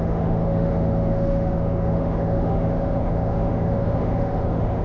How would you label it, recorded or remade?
remade